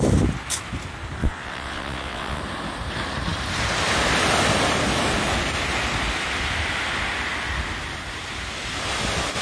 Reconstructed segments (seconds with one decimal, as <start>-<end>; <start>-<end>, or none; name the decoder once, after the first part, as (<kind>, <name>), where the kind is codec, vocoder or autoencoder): 1.2-2.4 (vocoder, WaveNeXt)